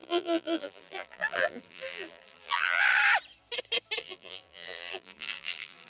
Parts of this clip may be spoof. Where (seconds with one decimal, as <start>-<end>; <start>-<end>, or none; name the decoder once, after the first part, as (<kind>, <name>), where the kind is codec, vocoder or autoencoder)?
0.0-2.8 (vocoder, BigVGAN v2); 4.0-5.9